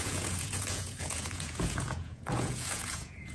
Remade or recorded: remade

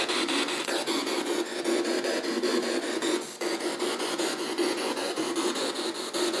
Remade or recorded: remade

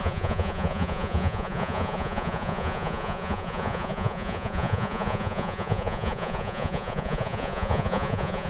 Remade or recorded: remade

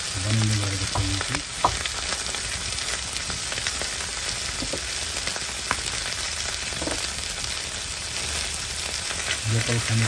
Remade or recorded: recorded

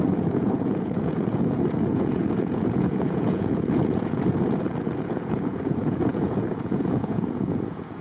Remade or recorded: remade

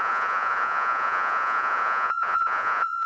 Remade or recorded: remade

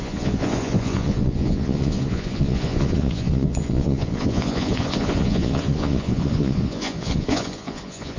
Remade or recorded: remade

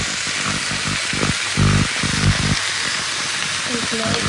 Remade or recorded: recorded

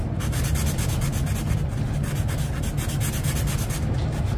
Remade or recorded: recorded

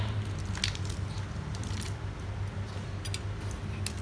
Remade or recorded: recorded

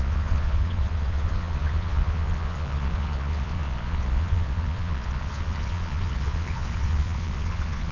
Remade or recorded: remade